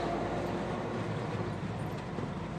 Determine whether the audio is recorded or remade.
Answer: recorded